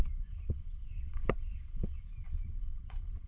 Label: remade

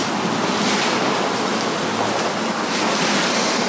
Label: recorded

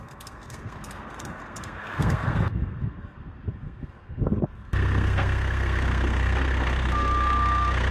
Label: remade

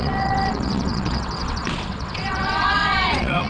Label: remade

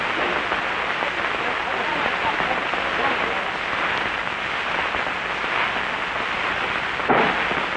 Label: recorded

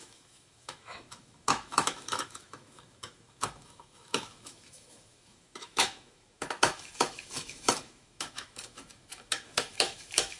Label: remade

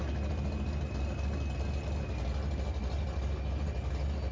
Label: recorded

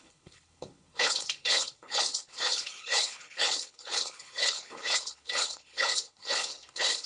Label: remade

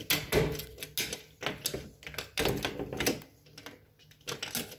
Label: recorded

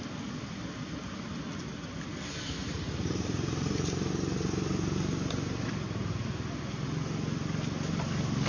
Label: recorded